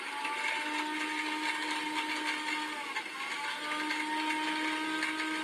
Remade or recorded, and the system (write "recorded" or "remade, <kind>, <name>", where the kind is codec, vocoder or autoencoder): recorded